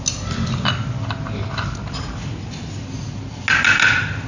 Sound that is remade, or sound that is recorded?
recorded